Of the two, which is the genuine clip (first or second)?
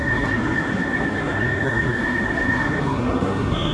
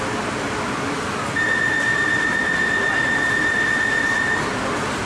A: second